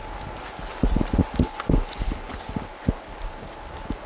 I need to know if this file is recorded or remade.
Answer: recorded